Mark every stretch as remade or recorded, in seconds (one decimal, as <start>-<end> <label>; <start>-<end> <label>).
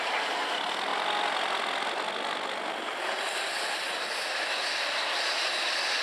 0.0-0.9 recorded; 0.9-4.5 remade; 4.5-6.0 recorded